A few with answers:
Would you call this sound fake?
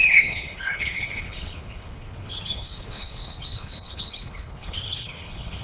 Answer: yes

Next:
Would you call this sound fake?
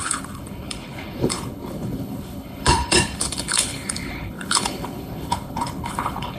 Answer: yes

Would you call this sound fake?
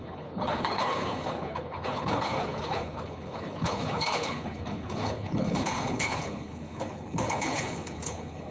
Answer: yes